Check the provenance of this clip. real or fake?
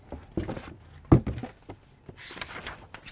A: real